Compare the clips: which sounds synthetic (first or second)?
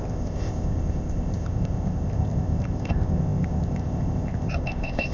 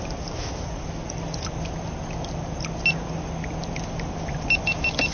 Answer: first